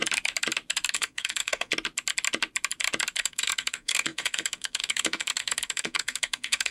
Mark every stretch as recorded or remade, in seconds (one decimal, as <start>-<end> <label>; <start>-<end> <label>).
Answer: 0.0-0.9 recorded; 0.9-1.7 remade; 1.7-3.2 recorded; 3.2-6.7 remade